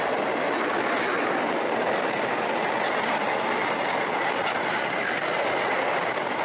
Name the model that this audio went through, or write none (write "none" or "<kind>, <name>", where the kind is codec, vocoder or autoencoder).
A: none